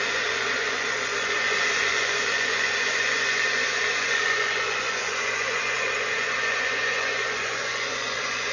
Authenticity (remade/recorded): remade